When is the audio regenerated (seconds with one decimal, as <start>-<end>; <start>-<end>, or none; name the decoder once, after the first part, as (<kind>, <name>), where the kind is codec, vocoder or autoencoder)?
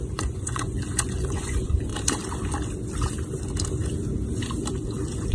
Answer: 0.0-1.9 (vocoder, Vocos)